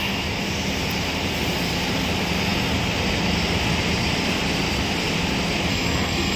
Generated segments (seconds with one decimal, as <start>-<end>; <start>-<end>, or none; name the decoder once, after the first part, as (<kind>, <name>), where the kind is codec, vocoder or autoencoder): 5.7-6.4 (codec, SNAC)